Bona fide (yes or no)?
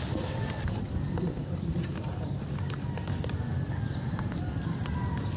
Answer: yes